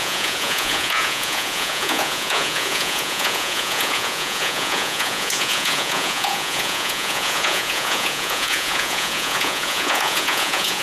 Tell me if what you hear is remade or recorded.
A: remade